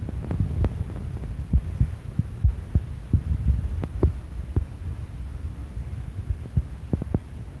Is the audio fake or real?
real